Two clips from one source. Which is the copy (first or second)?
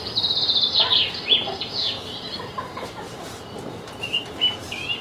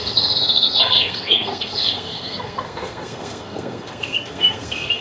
second